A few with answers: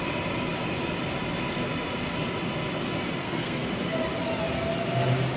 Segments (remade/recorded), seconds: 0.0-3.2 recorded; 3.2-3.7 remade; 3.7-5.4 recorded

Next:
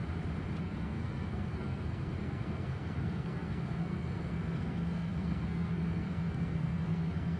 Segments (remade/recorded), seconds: 0.0-0.6 recorded; 0.6-7.4 remade

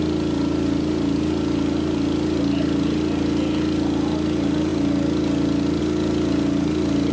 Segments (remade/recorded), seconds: 0.0-7.1 recorded